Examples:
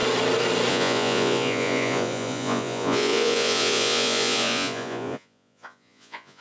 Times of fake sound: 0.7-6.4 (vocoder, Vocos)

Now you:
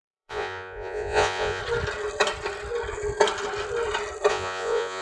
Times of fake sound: 0.0-1.6 (vocoder, Vocos); 4.3-5.0

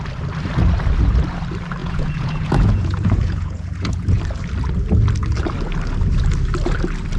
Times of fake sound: 1.8-4.2 (vocoder, Vocos)

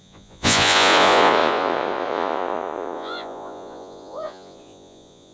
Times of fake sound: 0.0-5.3 (vocoder, Vocos)

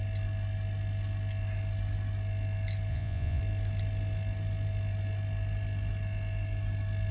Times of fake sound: 2.9-3.4 (vocoder, Vocos)